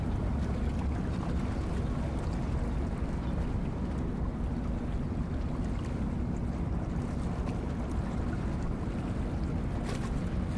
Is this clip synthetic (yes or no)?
no